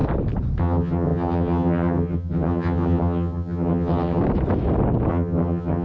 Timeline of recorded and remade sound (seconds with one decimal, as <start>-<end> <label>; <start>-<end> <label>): 0.0-0.6 recorded; 0.6-4.2 remade; 4.2-5.1 recorded; 5.1-5.8 remade